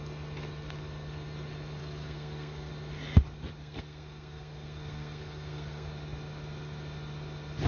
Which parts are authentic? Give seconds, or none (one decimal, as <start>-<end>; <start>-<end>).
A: 0.0-1.8; 2.7-3.6; 5.9-7.7